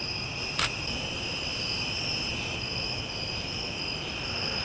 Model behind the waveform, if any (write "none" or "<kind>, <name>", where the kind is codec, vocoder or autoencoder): none